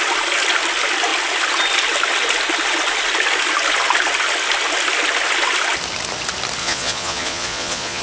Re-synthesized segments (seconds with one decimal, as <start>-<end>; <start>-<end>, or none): 6.6-8.0